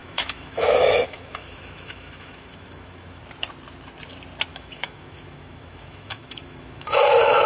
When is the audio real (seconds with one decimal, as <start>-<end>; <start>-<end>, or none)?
3.2-4.5